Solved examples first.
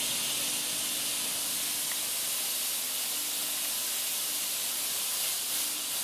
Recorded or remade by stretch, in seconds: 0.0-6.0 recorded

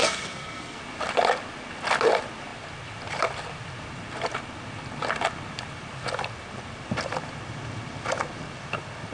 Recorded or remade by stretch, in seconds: 0.0-0.8 remade; 0.8-9.1 recorded

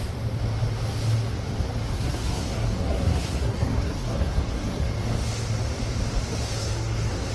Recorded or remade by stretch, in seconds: 0.0-1.9 recorded; 1.9-4.9 remade; 4.9-6.6 recorded; 6.6-7.3 remade